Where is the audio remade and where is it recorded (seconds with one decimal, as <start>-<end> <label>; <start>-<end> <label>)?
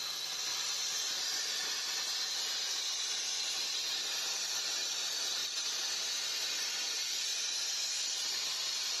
0.0-0.5 recorded; 0.5-1.0 remade; 1.0-7.3 recorded; 7.3-9.0 remade